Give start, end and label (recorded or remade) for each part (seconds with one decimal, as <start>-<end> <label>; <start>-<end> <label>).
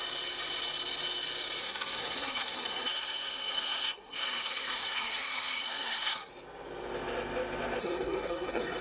0.0-1.6 recorded; 1.6-6.3 remade; 6.3-7.8 recorded; 7.8-8.8 remade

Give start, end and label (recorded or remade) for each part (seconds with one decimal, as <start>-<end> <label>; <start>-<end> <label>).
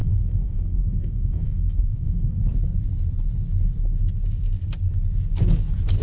0.0-2.4 remade; 2.4-6.0 recorded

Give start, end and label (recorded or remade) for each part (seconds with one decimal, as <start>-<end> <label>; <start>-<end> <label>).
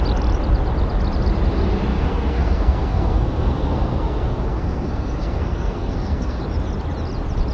0.0-1.9 recorded; 1.9-6.4 remade; 6.4-7.5 recorded